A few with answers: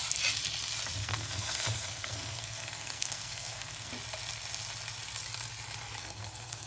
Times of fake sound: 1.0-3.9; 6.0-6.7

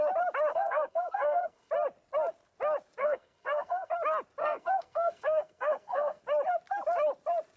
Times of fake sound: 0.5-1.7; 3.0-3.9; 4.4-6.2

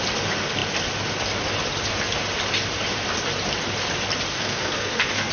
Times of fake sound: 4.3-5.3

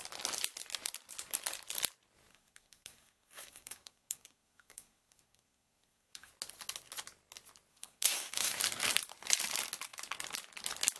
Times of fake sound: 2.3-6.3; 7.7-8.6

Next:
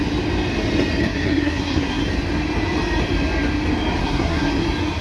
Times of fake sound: 1.0-2.0; 4.0-4.5

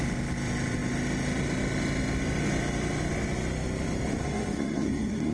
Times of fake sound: 4.2-5.3

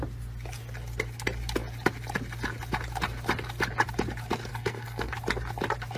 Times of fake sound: 4.5-5.1

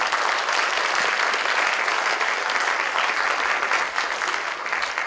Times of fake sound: none